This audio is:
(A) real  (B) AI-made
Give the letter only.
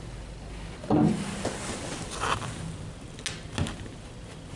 A